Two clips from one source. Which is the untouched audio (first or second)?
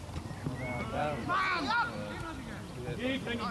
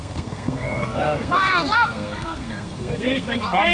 first